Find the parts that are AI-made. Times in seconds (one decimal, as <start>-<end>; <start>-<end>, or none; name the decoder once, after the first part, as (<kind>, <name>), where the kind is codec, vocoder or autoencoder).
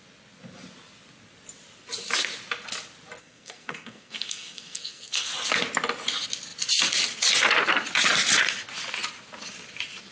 3.2-5.3 (codec, SNAC)